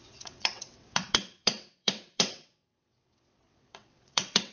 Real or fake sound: fake